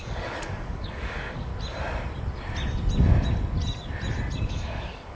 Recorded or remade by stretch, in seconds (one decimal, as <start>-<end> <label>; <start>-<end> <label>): 0.0-1.5 remade; 1.5-4.5 recorded; 4.5-5.1 remade